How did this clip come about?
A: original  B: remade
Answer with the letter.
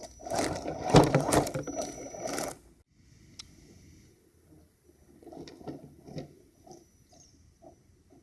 A